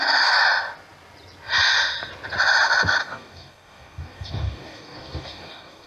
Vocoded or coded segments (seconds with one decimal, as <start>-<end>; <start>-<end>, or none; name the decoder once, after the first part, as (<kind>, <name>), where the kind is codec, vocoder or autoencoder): 3.0-5.9 (codec, DAC)